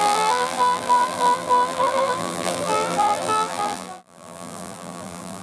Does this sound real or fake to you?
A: fake